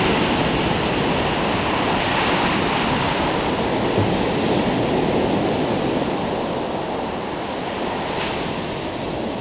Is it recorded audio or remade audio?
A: recorded